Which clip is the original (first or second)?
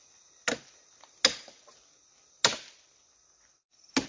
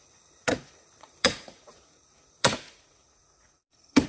first